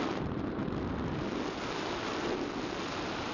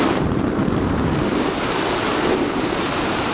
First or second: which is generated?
second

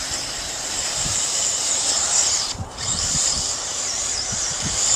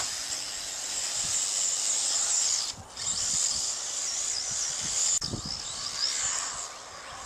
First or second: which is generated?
first